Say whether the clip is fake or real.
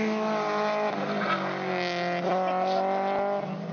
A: real